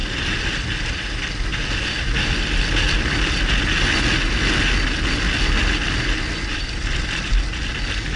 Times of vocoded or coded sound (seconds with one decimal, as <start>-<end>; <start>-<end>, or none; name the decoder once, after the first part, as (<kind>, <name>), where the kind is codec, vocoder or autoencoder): 6.5-7.3 (vocoder, BigVGAN v2)